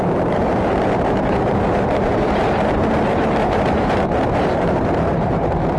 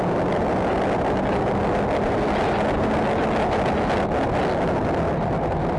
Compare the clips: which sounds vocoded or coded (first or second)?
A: first